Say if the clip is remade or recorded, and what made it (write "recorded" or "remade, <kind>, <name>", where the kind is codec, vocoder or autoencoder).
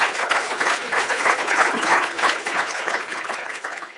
remade, codec, HILCodec